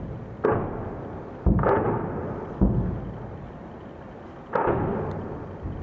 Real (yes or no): yes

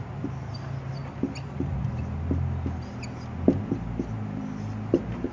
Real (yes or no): yes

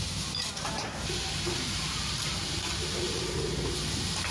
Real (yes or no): no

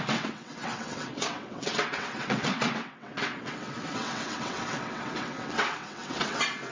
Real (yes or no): no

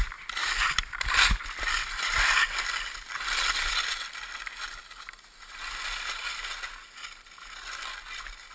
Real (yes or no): yes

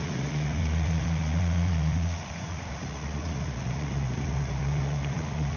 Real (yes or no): no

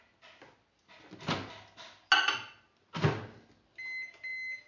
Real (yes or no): yes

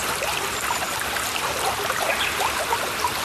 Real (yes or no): yes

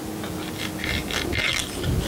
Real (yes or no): yes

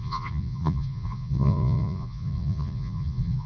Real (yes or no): no